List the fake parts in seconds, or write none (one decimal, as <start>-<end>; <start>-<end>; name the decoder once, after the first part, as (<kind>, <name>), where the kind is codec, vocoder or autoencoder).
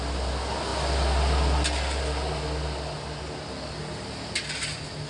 none